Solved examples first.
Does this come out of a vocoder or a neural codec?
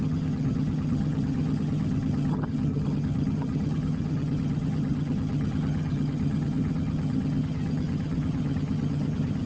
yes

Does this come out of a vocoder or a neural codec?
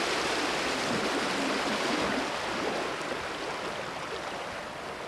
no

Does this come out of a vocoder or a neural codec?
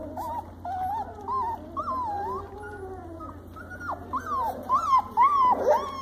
no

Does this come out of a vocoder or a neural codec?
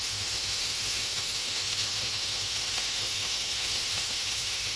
yes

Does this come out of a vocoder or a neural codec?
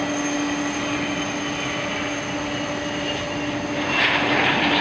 no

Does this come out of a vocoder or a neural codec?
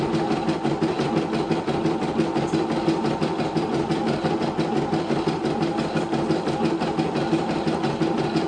no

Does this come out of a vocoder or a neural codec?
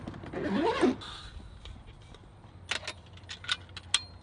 no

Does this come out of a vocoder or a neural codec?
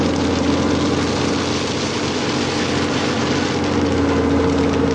no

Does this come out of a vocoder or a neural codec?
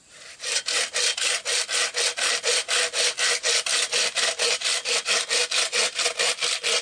no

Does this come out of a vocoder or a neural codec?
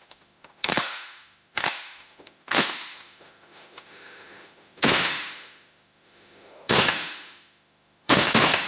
yes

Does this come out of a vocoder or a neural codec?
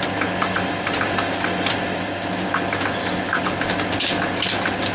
no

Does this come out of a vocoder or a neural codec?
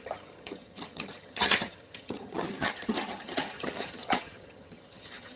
yes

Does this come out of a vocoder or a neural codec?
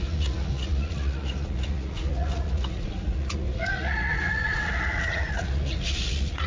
yes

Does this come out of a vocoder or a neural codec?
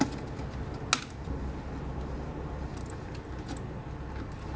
no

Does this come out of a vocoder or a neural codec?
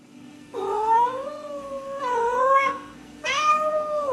yes